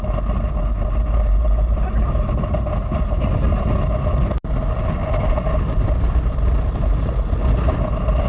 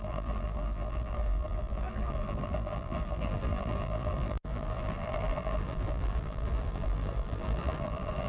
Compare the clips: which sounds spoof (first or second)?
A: second